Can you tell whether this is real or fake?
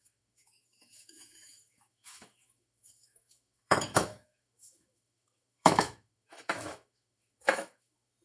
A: fake